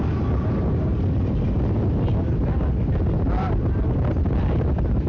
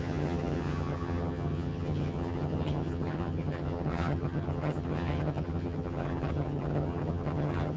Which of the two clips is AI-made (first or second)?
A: second